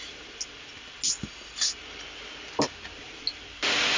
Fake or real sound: real